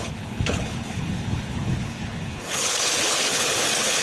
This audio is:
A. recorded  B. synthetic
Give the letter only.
B